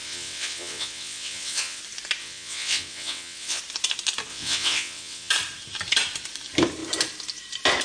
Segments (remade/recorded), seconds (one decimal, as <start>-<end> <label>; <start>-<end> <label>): 0.0-1.8 remade; 1.8-2.2 recorded; 2.2-3.6 remade; 3.6-4.3 recorded; 4.3-5.3 remade; 5.3-7.8 recorded